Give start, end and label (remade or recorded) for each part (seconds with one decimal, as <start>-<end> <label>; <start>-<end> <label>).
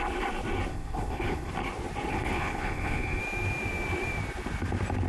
0.0-0.7 recorded; 0.7-1.5 remade; 1.5-2.1 recorded; 2.1-3.2 remade; 3.2-5.1 recorded